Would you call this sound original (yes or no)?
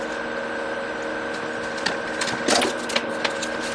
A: yes